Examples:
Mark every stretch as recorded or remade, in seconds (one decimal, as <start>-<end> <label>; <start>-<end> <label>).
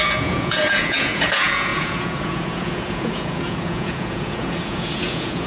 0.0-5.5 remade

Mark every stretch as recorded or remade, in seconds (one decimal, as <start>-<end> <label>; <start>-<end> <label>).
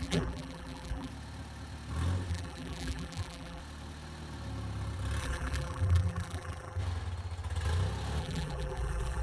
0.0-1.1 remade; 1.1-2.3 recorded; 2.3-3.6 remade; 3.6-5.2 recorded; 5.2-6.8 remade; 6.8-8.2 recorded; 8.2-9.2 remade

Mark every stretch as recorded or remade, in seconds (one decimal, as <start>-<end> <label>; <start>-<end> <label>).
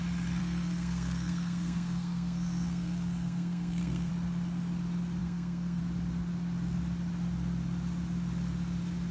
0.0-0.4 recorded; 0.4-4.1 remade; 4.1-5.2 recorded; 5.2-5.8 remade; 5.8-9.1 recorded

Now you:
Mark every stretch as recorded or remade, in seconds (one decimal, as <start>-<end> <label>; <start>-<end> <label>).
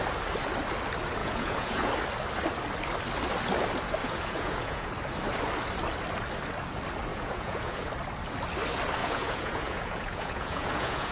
0.0-1.2 recorded; 1.2-1.9 remade; 1.9-4.0 recorded; 4.0-4.9 remade; 4.9-7.1 recorded; 7.1-7.9 remade; 7.9-9.0 recorded; 9.0-11.1 remade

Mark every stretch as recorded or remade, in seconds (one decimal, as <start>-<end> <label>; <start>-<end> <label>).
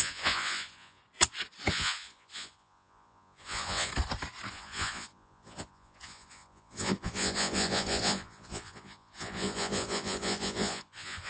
0.0-1.0 remade; 1.0-1.7 recorded; 1.7-3.9 remade; 3.9-4.5 recorded; 4.5-11.3 remade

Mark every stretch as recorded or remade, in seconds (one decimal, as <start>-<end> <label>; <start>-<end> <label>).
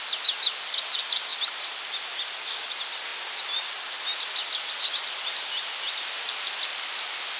0.0-7.4 recorded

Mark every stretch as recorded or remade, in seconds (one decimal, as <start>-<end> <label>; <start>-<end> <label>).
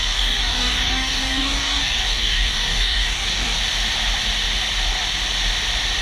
0.0-3.6 remade; 3.6-6.0 recorded